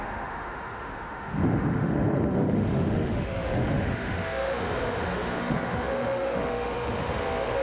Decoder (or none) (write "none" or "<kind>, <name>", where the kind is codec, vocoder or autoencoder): autoencoder, DAC-VAE